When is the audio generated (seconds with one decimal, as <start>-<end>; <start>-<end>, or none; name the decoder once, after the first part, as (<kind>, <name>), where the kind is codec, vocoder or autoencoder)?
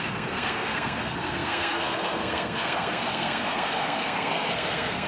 0.0-5.1 (codec, SNAC)